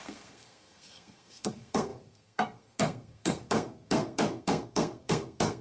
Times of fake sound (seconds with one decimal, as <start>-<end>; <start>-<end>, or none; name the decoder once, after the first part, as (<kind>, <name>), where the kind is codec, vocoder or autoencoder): 0.0-5.6 (codec, SNAC)